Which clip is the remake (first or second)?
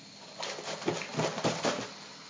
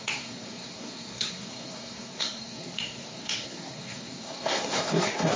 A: second